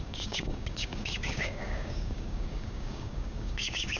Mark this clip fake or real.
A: fake